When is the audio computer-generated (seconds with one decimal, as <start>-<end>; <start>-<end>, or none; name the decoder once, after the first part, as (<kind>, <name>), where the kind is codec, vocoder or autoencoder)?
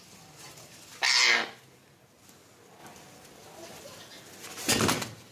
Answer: none